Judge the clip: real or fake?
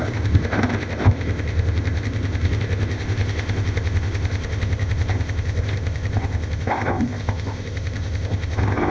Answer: fake